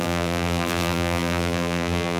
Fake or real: fake